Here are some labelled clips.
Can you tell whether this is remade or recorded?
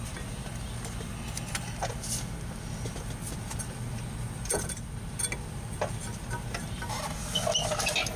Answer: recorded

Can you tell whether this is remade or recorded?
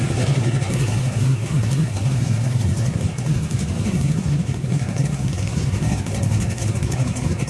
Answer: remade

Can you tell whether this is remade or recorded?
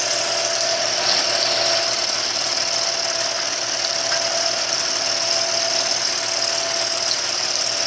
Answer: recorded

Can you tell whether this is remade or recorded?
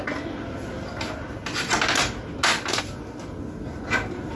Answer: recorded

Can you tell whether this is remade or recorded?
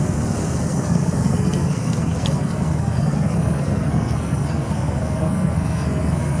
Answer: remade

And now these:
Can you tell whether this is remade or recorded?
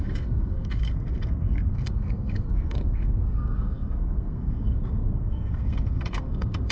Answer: remade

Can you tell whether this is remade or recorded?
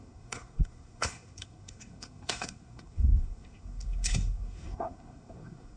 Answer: remade